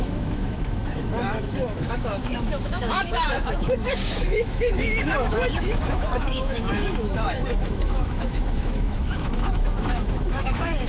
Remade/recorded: remade